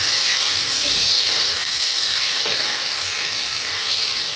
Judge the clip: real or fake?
fake